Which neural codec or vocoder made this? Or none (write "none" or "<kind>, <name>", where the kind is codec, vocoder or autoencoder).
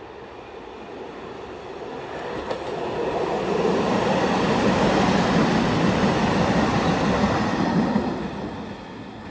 none